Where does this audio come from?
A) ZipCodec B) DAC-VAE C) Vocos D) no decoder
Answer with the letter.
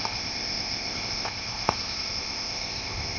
A